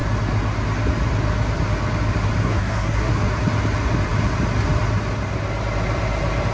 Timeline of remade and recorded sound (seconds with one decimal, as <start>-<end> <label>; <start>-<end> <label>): 0.0-2.4 recorded; 2.4-3.1 remade; 3.1-6.5 recorded